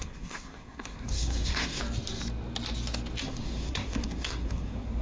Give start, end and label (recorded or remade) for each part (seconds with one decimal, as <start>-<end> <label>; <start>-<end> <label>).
0.0-1.8 remade; 1.8-3.2 recorded; 3.2-5.0 remade